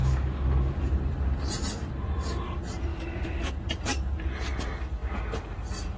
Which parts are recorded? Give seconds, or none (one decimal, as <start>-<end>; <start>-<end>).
0.8-2.9; 3.5-6.0